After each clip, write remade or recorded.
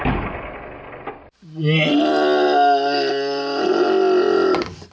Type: recorded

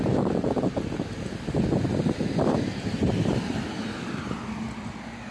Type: recorded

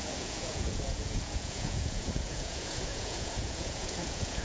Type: remade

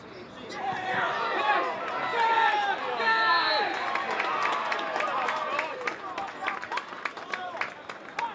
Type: recorded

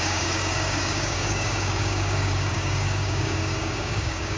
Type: remade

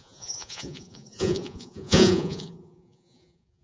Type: remade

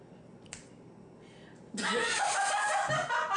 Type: recorded